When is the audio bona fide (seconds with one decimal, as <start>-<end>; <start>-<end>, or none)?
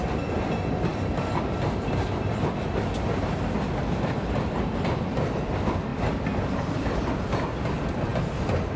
0.0-8.8